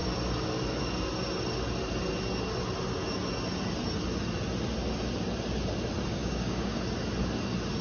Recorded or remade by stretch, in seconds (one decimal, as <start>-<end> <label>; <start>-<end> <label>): 0.0-6.2 recorded; 6.2-6.8 remade; 6.8-7.8 recorded